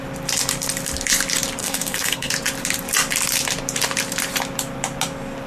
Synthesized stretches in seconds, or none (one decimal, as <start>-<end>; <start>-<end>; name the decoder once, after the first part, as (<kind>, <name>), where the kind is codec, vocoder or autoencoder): 1.6-2.3 (codec, SNAC)